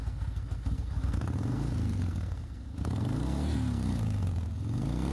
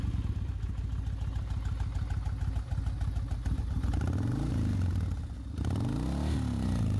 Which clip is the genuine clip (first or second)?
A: second